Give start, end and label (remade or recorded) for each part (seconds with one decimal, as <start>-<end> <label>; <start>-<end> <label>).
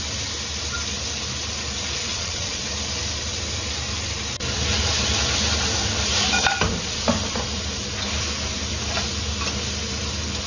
0.0-2.1 recorded; 2.1-2.6 remade; 2.6-10.5 recorded